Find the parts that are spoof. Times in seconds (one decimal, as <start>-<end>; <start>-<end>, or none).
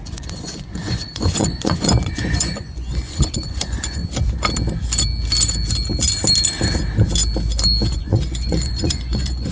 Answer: 0.0-4.0; 7.9-9.5